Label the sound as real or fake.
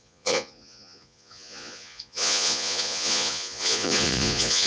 fake